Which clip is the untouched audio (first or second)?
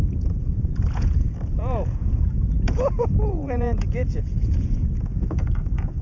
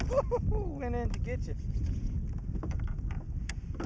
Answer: second